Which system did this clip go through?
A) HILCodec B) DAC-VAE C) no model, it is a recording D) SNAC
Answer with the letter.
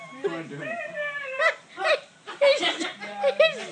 C